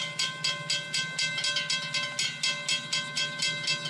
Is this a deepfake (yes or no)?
no